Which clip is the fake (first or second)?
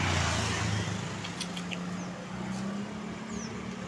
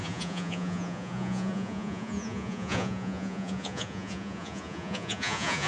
second